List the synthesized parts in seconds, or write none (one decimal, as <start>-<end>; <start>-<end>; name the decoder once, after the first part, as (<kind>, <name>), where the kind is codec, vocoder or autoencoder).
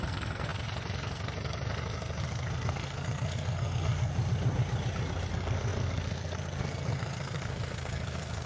0.0-4.1 (codec, SNAC); 5.3-8.5